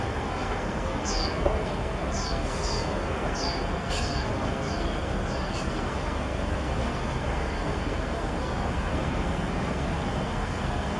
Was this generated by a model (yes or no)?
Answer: yes